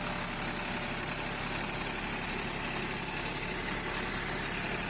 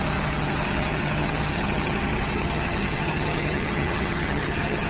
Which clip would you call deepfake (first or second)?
second